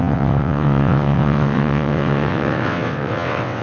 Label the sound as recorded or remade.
remade